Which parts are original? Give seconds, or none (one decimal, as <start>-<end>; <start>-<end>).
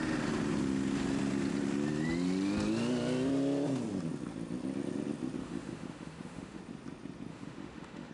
0.0-5.4; 6.6-7.3